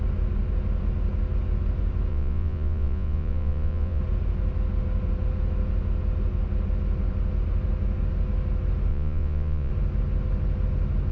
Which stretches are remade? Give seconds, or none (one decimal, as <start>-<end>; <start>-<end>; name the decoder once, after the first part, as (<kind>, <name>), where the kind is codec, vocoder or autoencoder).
2.1-4.0 (vocoder, Vocos); 8.9-9.7